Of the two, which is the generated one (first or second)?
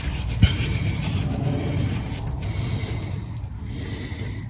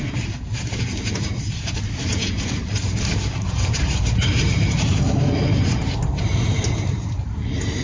second